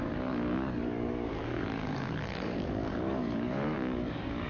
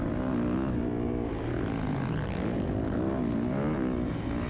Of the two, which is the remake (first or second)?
first